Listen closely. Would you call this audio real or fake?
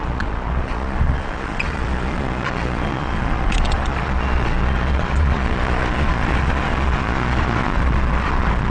fake